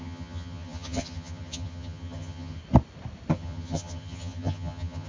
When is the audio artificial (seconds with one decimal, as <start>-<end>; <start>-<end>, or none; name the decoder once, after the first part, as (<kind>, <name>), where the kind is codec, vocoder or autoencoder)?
0.0-2.6 (vocoder, HiFi-GAN); 3.3-5.1